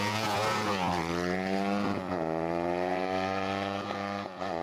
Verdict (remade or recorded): remade